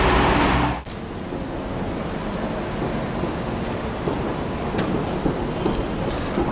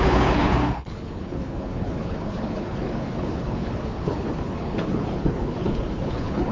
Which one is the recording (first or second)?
first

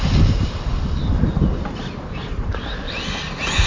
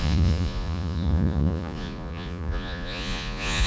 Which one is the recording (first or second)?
first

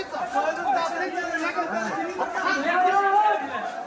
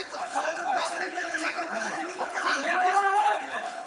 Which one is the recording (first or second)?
first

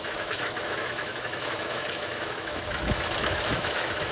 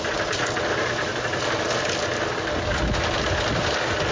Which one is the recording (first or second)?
second